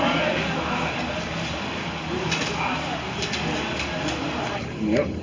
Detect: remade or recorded recorded